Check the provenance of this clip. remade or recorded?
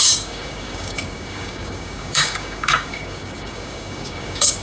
remade